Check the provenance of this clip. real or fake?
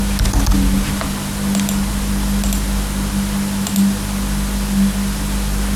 real